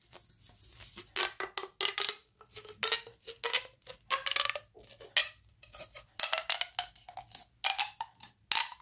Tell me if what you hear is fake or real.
real